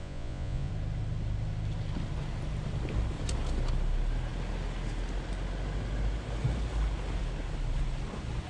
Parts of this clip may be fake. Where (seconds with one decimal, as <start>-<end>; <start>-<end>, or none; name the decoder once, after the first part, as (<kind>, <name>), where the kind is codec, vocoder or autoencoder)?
0.0-0.7 (vocoder, Vocos)